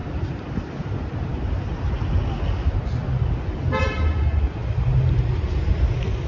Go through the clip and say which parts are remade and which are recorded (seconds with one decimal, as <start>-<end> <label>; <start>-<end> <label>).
0.0-0.7 remade; 0.7-3.0 recorded; 3.0-4.1 remade; 4.1-6.3 recorded